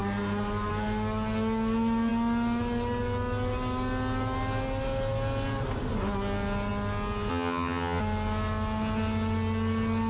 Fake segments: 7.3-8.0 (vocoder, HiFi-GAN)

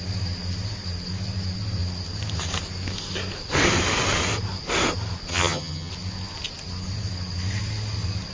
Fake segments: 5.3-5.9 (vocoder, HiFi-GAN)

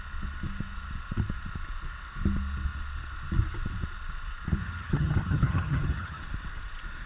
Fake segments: 4.6-6.2 (vocoder, HiFi-GAN)